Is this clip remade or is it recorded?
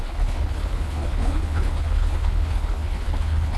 remade